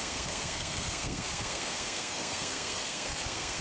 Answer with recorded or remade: remade